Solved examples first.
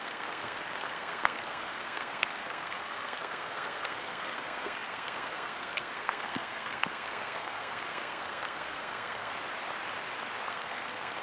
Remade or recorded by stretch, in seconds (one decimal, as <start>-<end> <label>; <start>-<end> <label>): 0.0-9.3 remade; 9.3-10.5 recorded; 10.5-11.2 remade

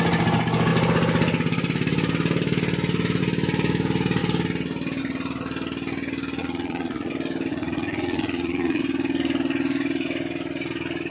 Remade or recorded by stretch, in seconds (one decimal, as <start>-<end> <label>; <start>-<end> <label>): 0.0-6.4 recorded; 6.4-7.1 remade; 7.1-7.5 recorded; 7.5-8.8 remade; 8.8-11.1 recorded

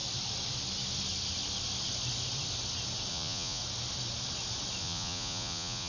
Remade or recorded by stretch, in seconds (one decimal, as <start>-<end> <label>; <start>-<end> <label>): 0.0-3.1 recorded; 3.1-3.6 remade; 3.6-4.8 recorded; 4.8-5.9 remade